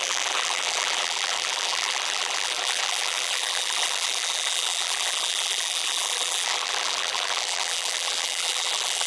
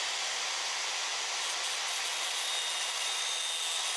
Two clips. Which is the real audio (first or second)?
second